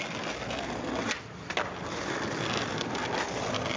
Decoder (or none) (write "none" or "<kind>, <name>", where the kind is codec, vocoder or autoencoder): none